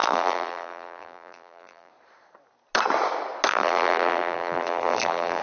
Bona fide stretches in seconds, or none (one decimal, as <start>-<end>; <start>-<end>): 1.9-3.5